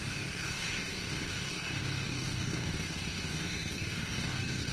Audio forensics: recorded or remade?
remade